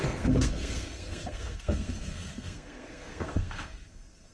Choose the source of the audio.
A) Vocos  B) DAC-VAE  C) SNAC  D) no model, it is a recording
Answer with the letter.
C